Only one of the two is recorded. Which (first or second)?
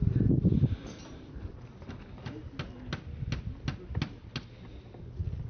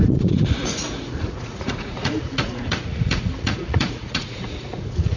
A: first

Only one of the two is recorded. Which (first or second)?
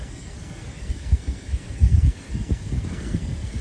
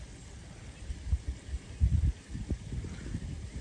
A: second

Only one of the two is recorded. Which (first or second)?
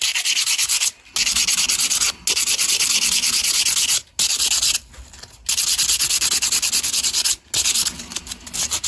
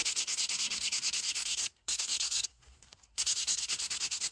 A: first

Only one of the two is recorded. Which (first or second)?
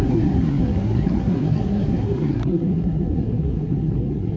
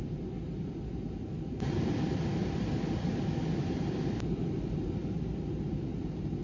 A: second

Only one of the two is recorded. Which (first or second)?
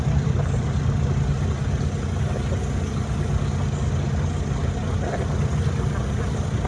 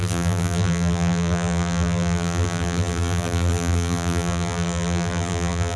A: first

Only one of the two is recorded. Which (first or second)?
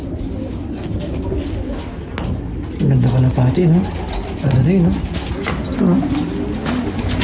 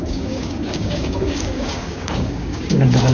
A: first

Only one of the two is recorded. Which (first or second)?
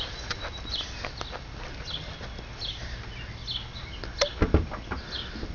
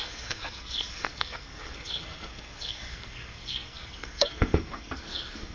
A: first